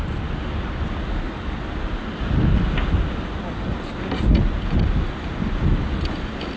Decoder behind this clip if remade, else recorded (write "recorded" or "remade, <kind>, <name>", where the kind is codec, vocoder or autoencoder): recorded